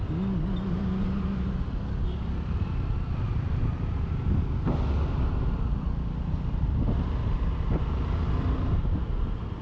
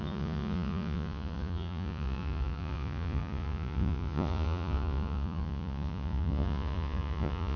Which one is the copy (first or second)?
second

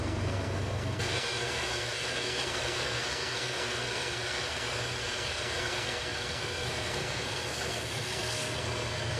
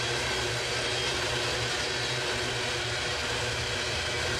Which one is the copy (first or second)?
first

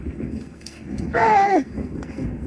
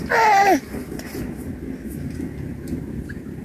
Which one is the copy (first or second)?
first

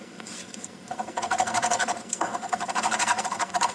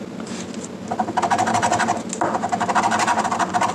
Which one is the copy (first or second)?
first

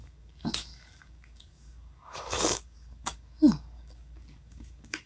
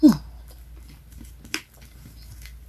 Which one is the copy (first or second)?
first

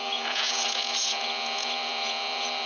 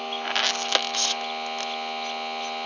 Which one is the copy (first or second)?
first